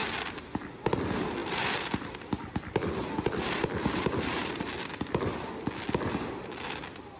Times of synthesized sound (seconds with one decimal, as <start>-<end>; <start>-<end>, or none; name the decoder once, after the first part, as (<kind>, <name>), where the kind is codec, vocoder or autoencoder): 1.4-5.3 (vocoder, BigVGAN v2)